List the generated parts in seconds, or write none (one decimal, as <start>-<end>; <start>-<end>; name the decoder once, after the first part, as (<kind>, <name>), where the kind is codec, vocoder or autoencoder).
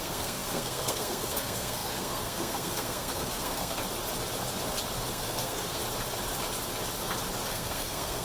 0.0-3.8 (codec, SNAC); 5.1-5.8; 7.5-8.2